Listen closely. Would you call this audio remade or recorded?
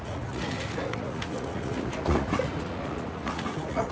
remade